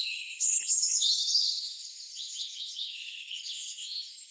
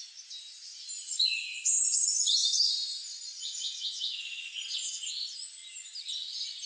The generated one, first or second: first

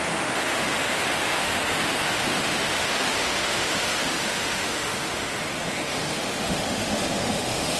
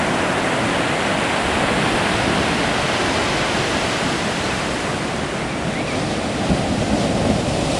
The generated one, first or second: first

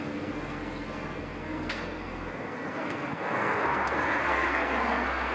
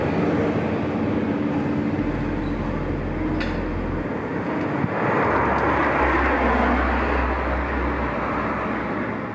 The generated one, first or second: first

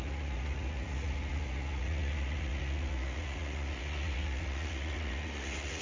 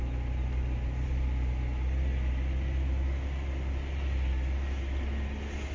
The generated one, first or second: first